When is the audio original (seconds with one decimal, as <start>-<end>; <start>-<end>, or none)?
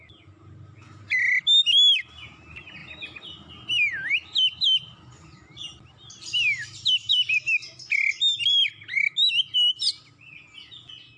0.0-11.2